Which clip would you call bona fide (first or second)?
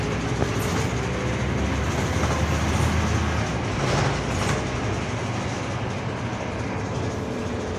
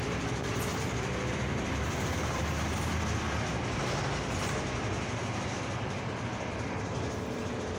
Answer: first